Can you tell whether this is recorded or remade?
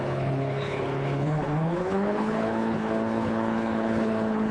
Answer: remade